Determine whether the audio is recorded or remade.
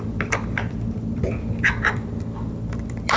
remade